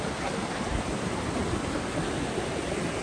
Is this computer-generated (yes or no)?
no